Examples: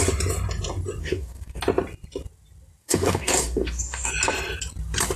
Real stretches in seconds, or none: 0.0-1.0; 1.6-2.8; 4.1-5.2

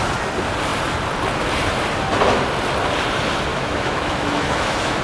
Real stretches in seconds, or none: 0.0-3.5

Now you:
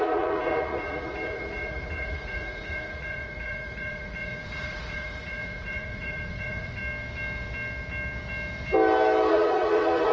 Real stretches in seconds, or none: 6.8-9.3

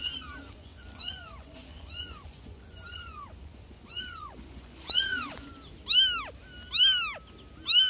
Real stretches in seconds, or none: 5.5-7.9

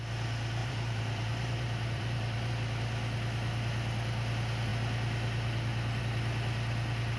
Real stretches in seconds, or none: 0.0-0.6; 2.5-7.2